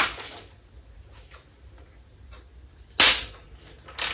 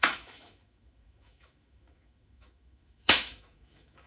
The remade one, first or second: second